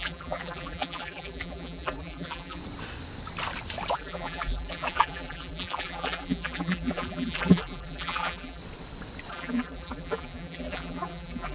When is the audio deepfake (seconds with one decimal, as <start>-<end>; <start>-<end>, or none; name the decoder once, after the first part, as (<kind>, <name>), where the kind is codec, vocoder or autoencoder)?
0.0-2.6 (vocoder, BigVGAN v2); 3.9-8.6; 9.3-11.5